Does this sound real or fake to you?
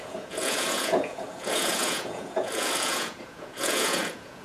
fake